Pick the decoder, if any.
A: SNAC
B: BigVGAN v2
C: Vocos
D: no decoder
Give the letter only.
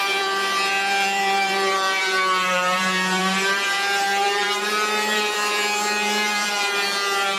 B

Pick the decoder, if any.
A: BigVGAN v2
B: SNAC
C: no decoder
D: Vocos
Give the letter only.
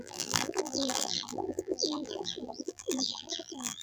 A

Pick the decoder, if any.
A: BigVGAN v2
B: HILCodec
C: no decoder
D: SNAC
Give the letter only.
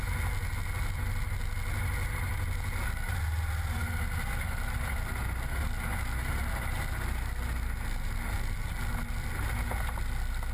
C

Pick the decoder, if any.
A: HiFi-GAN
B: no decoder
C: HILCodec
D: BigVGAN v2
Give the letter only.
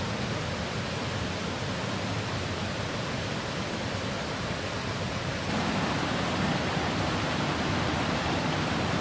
B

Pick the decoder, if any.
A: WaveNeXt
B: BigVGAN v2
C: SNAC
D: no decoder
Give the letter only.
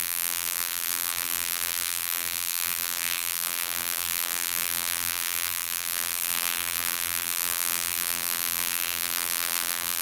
B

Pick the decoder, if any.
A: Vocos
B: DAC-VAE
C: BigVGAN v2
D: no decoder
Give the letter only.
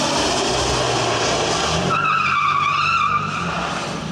D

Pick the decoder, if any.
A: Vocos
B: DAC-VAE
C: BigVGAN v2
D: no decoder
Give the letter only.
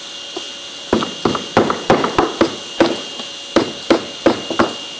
D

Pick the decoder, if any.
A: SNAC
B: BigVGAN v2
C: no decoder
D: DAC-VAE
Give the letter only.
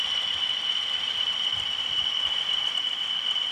C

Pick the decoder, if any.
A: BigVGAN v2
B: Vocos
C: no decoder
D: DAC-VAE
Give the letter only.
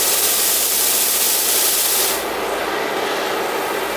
C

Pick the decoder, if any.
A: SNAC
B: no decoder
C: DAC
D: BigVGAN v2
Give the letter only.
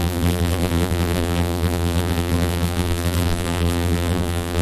D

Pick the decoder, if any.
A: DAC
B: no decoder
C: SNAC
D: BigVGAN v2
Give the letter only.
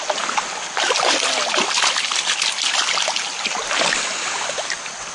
B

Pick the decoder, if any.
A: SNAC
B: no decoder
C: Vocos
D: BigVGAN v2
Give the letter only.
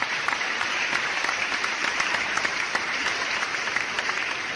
D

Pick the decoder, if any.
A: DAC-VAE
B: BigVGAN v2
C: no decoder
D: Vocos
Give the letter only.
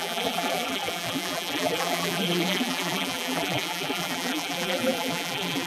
B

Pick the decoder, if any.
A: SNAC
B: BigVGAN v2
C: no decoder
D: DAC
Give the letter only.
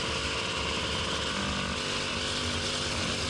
C